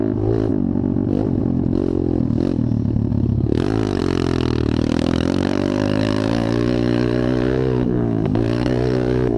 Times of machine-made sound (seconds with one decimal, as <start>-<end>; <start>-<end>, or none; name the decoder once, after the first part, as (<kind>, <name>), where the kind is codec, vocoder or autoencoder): 3.1-4.0 (codec, DAC); 4.6-9.4